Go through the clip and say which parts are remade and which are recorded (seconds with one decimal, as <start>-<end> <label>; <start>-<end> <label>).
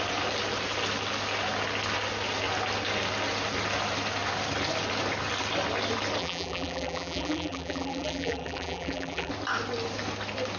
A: 0.0-6.2 recorded; 6.2-9.3 remade; 9.3-10.6 recorded